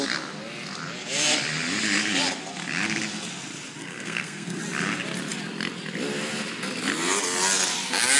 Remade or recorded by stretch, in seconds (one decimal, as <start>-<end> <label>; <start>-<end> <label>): 0.0-3.8 recorded; 3.8-4.6 remade; 4.6-8.2 recorded